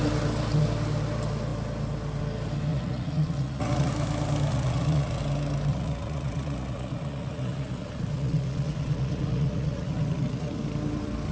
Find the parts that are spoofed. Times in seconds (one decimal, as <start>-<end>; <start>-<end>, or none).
2.7-3.9; 4.5-5.2; 5.7-10.6

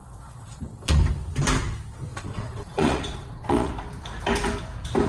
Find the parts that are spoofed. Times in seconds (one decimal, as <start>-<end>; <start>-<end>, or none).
0.0-1.0; 2.1-3.7

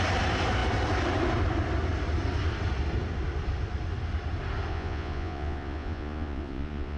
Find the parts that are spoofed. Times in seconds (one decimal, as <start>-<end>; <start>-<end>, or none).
4.7-7.0

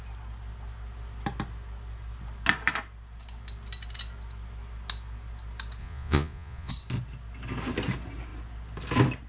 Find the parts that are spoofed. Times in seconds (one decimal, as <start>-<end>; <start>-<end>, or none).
5.8-6.7

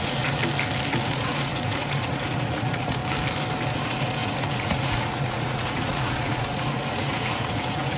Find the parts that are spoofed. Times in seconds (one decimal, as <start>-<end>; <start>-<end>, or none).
0.0-0.4; 1.0-3.0; 3.7-8.0

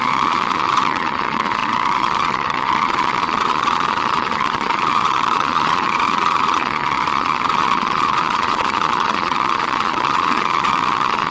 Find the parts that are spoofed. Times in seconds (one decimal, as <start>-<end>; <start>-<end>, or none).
0.0-11.3